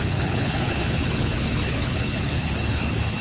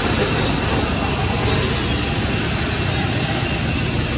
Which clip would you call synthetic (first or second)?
first